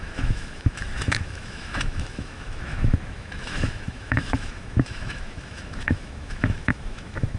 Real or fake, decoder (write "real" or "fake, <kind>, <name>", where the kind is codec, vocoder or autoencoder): fake, autoencoder, DAC-VAE